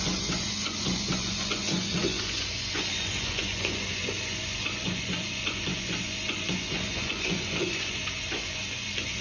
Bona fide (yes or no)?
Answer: no